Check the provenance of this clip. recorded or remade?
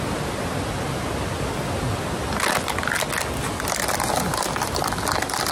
recorded